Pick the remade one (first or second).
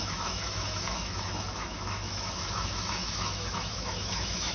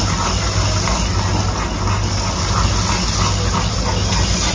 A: first